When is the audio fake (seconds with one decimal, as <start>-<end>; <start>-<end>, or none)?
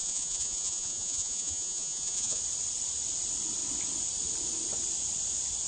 0.0-2.4